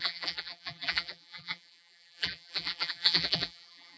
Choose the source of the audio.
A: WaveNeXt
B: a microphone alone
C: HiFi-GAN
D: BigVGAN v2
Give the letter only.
D